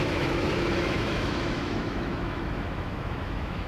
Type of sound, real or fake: fake